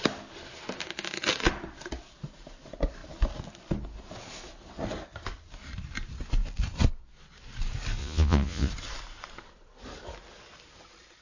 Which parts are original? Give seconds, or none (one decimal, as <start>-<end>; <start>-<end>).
0.0-8.0; 8.7-11.2